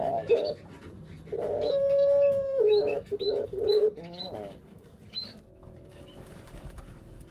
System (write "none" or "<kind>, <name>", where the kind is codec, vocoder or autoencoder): codec, DAC